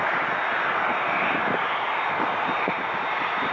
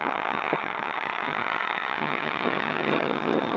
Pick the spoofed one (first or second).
second